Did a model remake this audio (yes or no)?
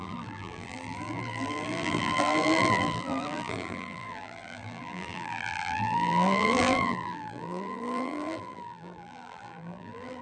yes